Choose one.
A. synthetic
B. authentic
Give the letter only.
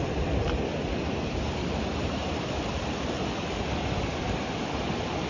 B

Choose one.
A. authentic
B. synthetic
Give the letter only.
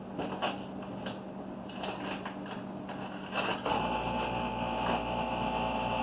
A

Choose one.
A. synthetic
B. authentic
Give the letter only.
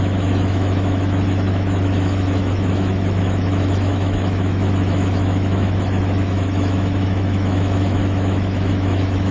A